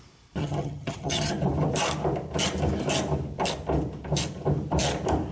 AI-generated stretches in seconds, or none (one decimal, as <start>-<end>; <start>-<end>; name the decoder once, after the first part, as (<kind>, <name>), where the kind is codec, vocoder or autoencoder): 0.4-1.3 (vocoder, HiFi-GAN)